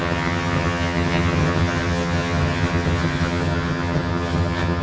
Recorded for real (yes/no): no